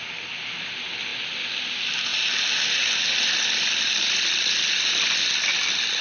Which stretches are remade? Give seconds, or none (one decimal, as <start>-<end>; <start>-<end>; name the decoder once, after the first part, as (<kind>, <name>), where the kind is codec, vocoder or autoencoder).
none